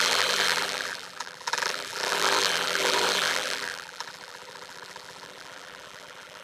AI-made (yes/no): yes